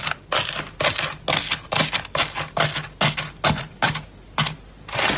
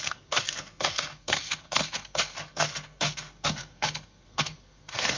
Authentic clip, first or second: first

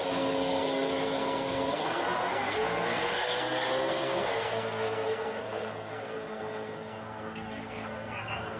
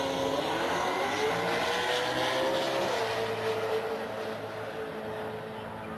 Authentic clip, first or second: second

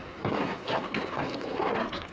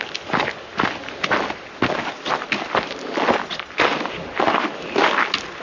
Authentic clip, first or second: second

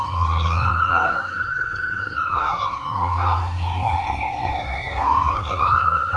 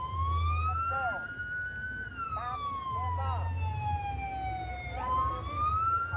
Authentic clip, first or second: second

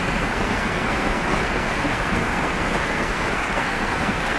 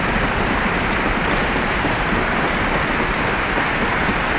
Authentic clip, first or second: second